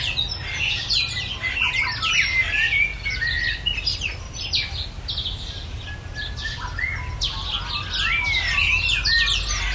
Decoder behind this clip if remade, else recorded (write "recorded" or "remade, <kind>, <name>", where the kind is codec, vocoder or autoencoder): recorded